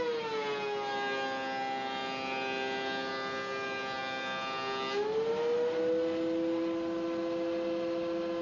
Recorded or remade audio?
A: recorded